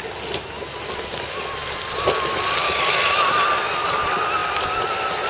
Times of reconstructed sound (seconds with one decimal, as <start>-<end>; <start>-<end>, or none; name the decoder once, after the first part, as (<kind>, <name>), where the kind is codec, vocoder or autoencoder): none